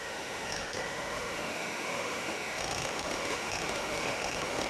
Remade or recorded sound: remade